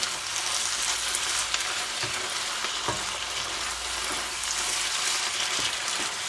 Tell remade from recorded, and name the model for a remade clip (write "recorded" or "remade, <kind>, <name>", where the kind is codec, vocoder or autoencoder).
recorded